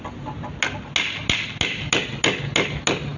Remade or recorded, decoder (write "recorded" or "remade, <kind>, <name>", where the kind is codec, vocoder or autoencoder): recorded